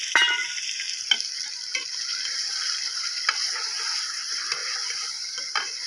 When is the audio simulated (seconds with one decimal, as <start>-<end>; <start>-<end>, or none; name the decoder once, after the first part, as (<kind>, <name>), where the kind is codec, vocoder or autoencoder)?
0.0-5.9 (vocoder, BigVGAN v2)